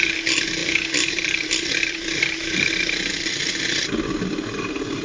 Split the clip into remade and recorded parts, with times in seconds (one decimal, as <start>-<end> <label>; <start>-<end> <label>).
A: 0.0-0.6 recorded; 0.6-3.6 remade; 3.6-5.0 recorded

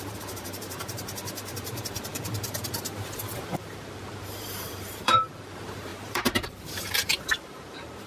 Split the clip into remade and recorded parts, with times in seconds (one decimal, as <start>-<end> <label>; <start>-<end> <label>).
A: 0.0-8.1 remade

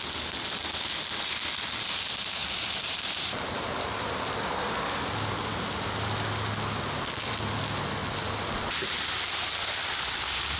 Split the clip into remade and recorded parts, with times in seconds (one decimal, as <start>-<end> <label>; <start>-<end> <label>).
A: 0.0-2.4 recorded; 2.4-3.4 remade; 3.4-10.6 recorded

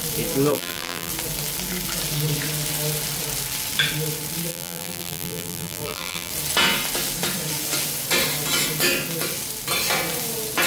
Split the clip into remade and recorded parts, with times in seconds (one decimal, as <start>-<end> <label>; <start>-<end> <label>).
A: 0.0-0.5 recorded; 0.5-1.1 remade; 1.1-4.5 recorded; 4.5-6.3 remade; 6.3-10.7 recorded

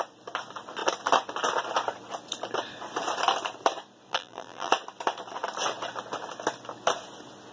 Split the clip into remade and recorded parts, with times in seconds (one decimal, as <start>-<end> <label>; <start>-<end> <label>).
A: 0.0-4.1 recorded; 4.1-4.7 remade; 4.7-7.5 recorded